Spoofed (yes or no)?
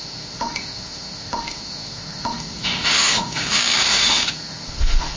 yes